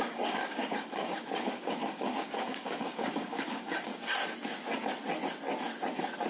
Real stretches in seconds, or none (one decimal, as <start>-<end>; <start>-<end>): 3.9-6.3